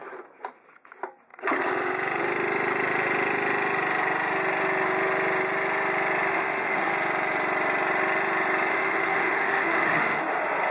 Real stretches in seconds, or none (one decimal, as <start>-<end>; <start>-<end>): 0.0-6.3; 6.9-8.7; 10.2-10.7